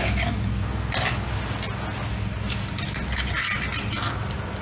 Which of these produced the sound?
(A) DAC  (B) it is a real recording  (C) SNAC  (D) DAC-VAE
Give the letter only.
B